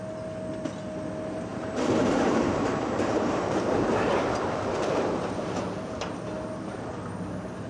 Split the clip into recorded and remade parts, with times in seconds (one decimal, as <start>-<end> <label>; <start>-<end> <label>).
0.0-1.5 recorded; 1.5-5.7 remade; 5.7-7.7 recorded